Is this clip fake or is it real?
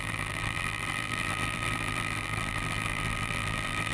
fake